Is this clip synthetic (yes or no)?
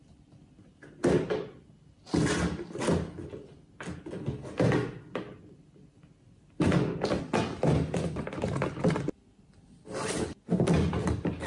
no